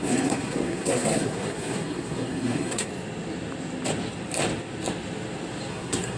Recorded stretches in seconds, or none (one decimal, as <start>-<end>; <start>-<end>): 2.9-5.7